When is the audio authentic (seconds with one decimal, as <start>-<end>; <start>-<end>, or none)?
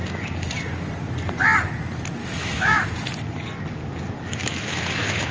0.0-2.2; 2.9-4.4